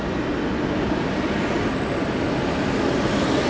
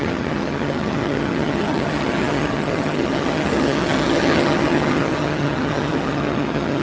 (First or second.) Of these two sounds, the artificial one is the second